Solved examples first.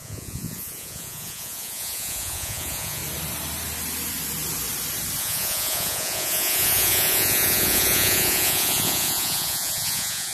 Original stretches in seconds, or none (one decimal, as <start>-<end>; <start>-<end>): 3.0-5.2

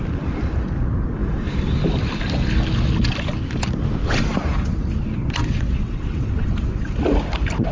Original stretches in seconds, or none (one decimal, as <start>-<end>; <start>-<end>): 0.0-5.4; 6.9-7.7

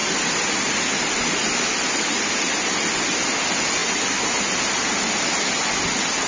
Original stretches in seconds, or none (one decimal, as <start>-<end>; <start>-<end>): 0.0-6.3

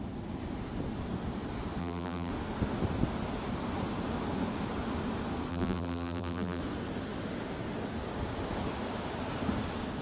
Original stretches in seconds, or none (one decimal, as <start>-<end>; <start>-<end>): 0.0-1.8; 2.3-5.5; 6.6-10.0

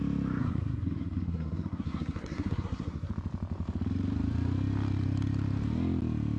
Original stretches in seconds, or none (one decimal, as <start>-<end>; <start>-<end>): 0.0-0.4; 3.1-6.4